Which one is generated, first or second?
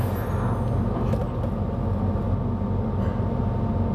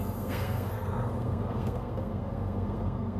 second